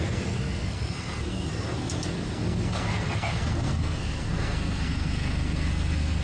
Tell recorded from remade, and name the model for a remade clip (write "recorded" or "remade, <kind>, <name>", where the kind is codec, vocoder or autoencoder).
remade, codec, SNAC